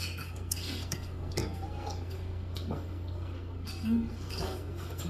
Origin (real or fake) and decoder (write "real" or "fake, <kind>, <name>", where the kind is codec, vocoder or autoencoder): fake, codec, SNAC